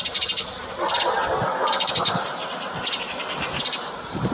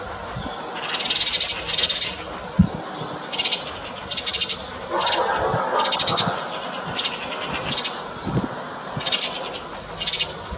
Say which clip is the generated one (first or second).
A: first